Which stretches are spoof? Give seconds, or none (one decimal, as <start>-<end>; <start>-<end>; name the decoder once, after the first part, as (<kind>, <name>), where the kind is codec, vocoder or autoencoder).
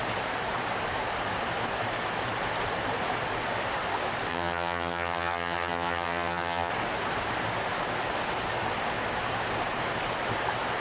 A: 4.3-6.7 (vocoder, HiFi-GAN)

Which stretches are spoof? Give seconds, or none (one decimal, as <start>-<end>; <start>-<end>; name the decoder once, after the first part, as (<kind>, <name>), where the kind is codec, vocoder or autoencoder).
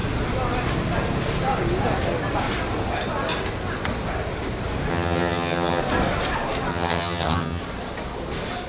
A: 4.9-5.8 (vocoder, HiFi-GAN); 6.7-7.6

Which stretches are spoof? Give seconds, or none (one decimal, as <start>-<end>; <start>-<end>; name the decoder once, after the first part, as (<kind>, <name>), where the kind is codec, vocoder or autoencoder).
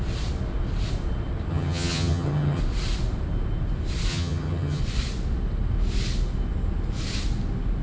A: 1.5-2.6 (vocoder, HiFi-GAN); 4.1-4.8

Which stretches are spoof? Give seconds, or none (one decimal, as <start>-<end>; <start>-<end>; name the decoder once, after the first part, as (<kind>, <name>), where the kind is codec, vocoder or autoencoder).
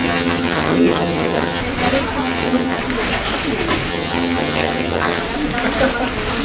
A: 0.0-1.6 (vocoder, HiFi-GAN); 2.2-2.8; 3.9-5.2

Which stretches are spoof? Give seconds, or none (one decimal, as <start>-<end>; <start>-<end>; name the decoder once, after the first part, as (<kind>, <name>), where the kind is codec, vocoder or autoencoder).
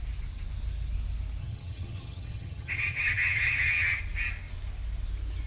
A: 1.4-4.0 (vocoder, HiFi-GAN)